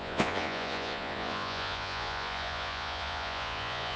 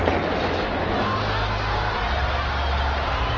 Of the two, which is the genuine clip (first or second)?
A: second